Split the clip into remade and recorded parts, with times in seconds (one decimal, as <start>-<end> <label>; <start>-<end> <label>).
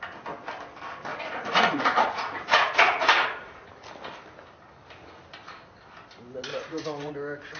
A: 0.0-1.1 recorded; 1.1-3.7 remade; 3.7-6.5 recorded; 6.5-7.1 remade; 7.1-7.6 recorded